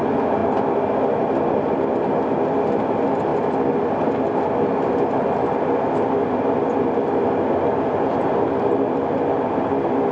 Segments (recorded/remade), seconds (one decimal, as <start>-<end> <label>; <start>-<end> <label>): 0.0-10.1 recorded